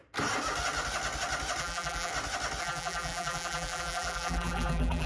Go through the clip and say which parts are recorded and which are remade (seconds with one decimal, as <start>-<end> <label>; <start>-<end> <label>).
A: 0.0-1.6 recorded; 1.6-2.1 remade; 2.1-2.6 recorded; 2.6-5.1 remade